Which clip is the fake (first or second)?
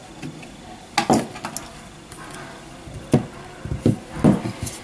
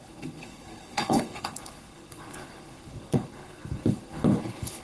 second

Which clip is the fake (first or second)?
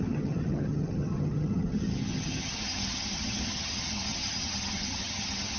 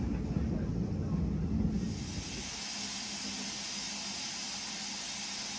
first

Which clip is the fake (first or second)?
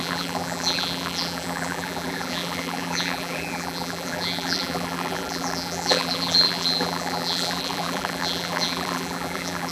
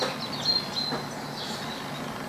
first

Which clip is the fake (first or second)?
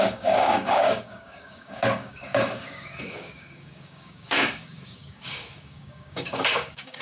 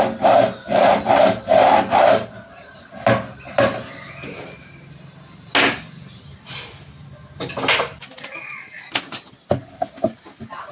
first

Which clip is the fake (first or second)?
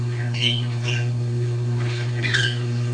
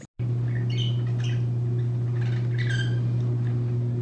first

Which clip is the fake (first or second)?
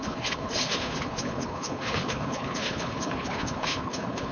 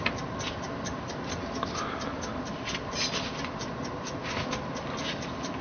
first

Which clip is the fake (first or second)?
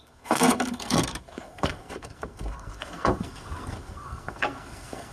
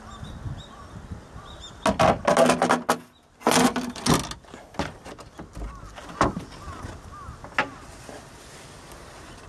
first